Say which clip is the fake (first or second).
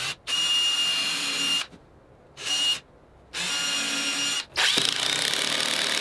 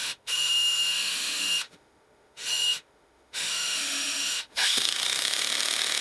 second